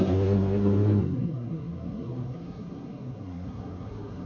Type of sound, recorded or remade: remade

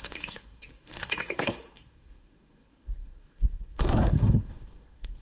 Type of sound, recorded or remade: remade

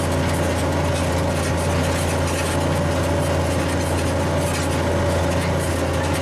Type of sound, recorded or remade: recorded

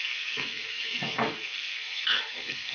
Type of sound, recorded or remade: remade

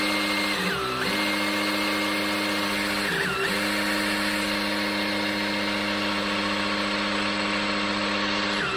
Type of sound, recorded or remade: recorded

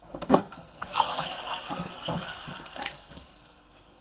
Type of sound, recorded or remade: remade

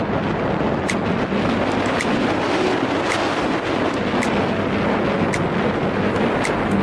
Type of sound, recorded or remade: recorded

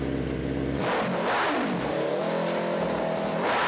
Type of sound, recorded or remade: recorded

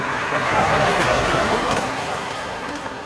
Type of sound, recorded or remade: remade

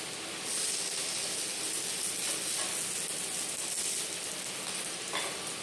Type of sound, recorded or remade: recorded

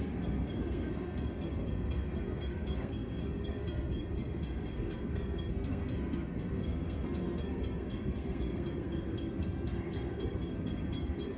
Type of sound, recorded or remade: remade